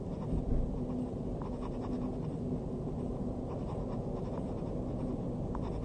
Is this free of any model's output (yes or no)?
yes